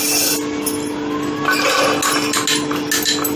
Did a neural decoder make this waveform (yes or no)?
no